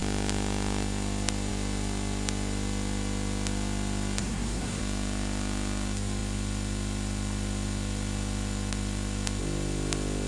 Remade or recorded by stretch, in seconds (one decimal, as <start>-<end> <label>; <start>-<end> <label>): 0.0-4.2 recorded; 4.2-4.8 remade; 4.8-10.3 recorded

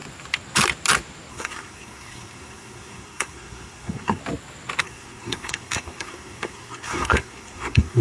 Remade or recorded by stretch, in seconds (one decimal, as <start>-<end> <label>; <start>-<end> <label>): 0.0-1.3 recorded; 1.3-4.2 remade; 4.2-4.8 recorded; 4.8-8.0 remade